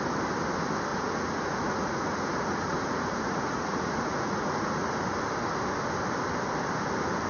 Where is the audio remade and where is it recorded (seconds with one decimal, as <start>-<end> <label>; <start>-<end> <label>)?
0.0-0.9 recorded; 0.9-4.9 remade; 4.9-7.3 recorded